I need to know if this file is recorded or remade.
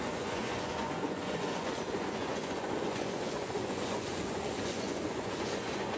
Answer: remade